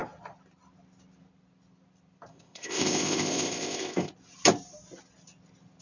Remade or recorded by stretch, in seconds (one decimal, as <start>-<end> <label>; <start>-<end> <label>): 0.0-2.3 recorded; 2.3-4.1 remade; 4.1-5.8 recorded